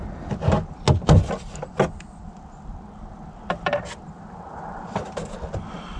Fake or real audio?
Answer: real